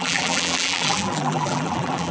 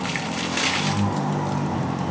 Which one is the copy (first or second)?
first